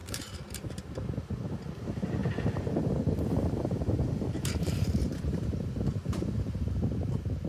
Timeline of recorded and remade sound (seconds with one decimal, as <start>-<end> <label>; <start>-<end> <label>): 0.0-0.9 remade; 0.9-2.2 recorded; 2.2-6.7 remade; 6.7-7.5 recorded